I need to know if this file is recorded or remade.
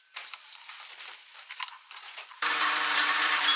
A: remade